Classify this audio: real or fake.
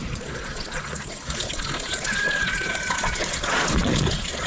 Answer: fake